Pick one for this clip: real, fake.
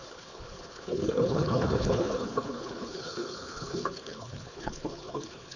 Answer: fake